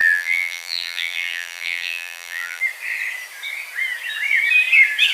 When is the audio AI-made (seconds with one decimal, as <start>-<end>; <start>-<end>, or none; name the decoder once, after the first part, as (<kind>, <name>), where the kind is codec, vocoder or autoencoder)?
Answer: 0.0-2.6 (vocoder, BigVGAN v2)